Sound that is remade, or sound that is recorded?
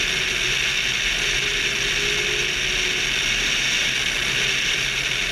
recorded